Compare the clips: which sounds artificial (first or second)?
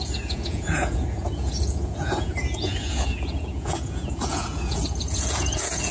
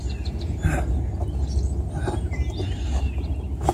first